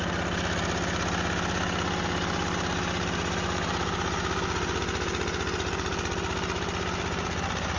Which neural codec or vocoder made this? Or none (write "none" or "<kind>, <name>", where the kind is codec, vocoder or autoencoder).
none